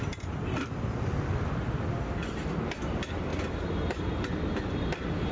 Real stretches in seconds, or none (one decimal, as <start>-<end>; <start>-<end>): 0.0-5.3